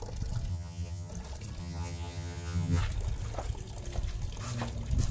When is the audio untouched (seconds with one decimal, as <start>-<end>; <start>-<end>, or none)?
0.0-0.5; 1.1-1.6; 2.8-5.1

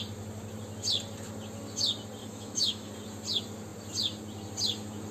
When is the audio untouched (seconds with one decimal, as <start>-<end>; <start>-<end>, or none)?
0.0-2.2; 2.9-5.1

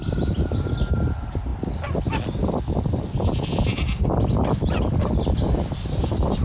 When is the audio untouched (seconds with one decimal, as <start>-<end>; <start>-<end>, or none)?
none

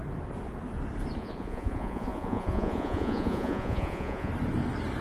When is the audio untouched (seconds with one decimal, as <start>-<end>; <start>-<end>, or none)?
0.0-1.2; 4.3-5.0

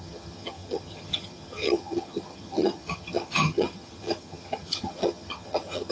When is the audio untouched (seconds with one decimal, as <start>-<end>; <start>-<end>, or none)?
none

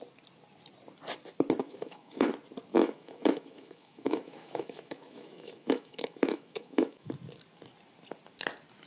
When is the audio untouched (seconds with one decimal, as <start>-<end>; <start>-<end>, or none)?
0.0-1.6; 2.3-2.7; 7.1-8.9

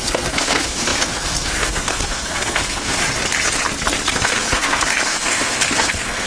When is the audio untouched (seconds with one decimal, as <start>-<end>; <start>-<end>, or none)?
3.0-4.0

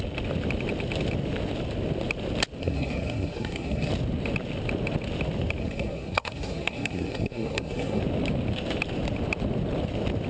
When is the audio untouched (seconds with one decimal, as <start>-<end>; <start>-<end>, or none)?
0.0-2.6; 3.9-5.6; 8.0-10.3